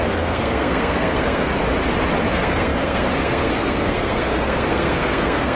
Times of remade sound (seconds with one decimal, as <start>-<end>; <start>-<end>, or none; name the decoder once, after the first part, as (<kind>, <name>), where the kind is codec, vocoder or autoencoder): 0.0-1.5 (codec, SNAC); 2.3-5.6